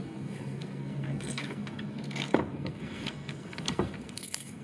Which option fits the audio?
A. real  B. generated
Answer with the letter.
B